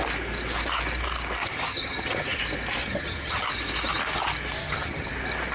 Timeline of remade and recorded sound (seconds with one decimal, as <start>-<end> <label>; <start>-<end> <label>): 0.0-1.4 recorded; 1.4-2.4 remade; 2.4-2.8 recorded; 2.8-3.5 remade; 3.5-4.6 recorded; 4.6-5.1 remade; 5.1-5.5 recorded